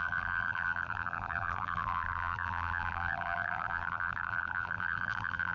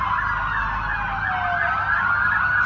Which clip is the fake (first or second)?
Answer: first